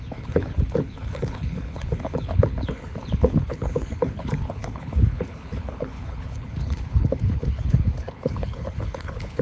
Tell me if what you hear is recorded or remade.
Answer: remade